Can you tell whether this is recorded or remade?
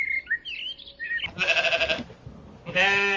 recorded